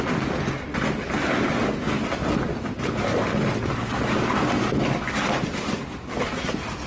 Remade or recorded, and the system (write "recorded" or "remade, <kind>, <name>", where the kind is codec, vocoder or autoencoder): recorded